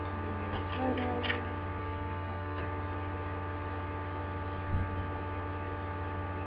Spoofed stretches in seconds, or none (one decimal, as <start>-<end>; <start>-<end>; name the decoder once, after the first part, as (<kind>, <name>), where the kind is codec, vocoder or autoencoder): 1.8-2.6 (codec, SNAC)